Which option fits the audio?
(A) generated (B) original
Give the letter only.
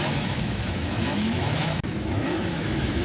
A